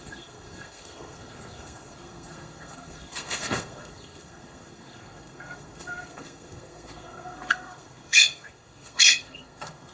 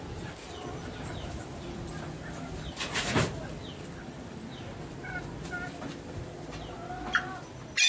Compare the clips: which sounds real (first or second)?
second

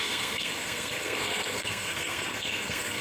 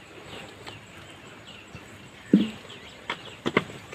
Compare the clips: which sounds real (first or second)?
second